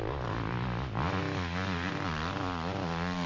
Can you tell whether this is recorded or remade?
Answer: recorded